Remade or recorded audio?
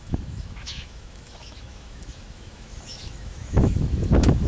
remade